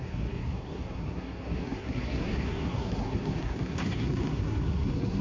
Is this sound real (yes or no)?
no